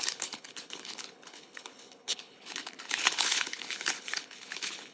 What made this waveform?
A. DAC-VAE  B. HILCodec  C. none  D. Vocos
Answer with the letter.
B